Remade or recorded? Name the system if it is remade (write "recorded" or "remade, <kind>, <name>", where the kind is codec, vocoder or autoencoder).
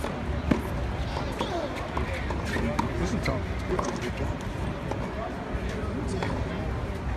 recorded